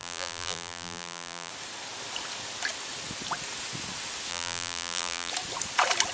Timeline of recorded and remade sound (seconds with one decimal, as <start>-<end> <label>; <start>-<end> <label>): 0.0-1.5 remade; 1.5-4.3 recorded; 4.3-5.3 remade; 5.3-6.1 recorded

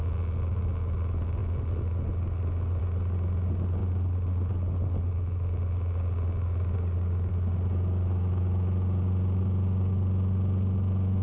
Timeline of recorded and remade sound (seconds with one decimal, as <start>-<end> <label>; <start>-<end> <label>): 0.0-11.2 recorded

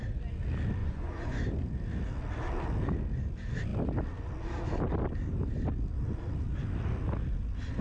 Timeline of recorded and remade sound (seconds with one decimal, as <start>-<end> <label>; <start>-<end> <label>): 0.0-0.8 recorded; 0.8-1.4 remade; 1.4-7.8 recorded